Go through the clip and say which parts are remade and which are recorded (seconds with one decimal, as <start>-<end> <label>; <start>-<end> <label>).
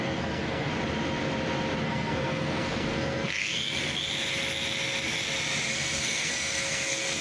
0.0-0.7 remade; 0.7-1.8 recorded; 1.8-3.8 remade; 3.8-5.7 recorded; 5.7-7.2 remade